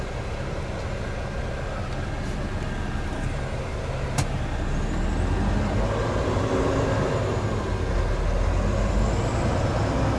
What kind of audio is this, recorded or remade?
recorded